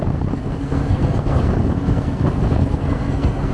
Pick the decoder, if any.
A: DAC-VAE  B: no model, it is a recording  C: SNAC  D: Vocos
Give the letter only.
C